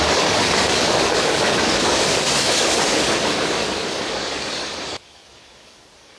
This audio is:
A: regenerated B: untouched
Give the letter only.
A